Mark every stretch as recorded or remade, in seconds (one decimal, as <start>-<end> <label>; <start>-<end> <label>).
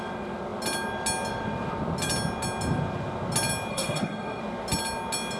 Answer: 0.0-3.7 recorded; 3.7-4.4 remade; 4.4-5.4 recorded